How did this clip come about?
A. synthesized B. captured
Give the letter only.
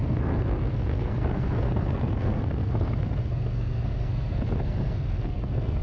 A